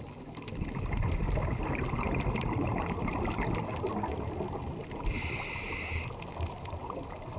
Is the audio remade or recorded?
recorded